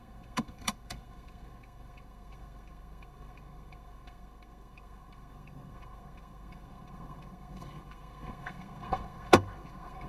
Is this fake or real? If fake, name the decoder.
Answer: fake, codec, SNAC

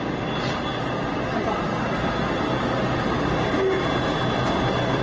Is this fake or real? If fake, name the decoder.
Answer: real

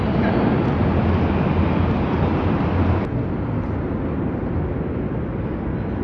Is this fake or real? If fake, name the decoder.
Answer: real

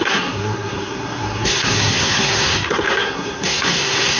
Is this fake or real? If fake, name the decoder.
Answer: fake, codec, SNAC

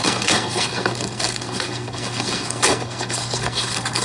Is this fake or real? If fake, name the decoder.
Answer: fake, codec, SNAC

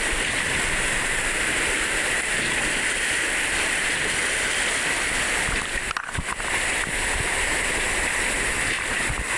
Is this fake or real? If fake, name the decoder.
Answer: real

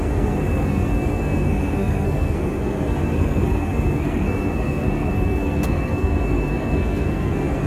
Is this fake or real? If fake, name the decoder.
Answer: fake, codec, SNAC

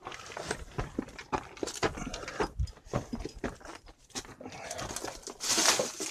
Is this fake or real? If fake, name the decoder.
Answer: real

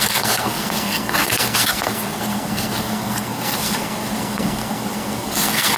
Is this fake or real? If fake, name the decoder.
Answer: fake, codec, SNAC